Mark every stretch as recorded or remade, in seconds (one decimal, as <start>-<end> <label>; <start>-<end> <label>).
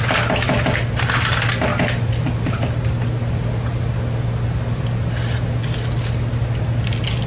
0.0-7.3 recorded